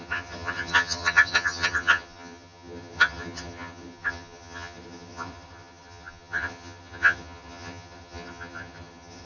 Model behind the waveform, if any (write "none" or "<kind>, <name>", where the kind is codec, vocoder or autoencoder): vocoder, HiFi-GAN